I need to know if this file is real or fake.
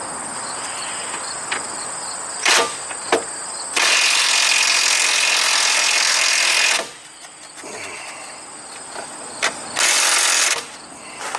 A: real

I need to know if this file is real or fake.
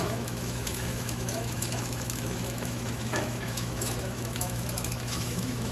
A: fake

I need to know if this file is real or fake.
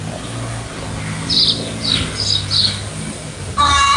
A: real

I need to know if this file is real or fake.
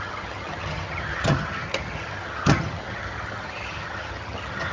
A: fake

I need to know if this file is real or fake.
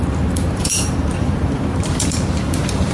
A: fake